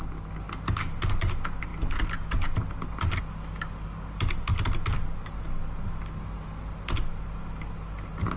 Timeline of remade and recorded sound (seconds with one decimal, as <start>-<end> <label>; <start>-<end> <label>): 0.0-8.4 recorded